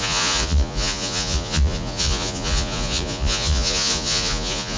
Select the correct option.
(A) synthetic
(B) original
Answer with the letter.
A